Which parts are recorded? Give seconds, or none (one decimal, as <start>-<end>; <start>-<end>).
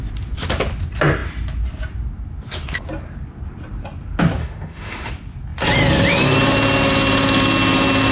0.0-4.4; 5.1-8.1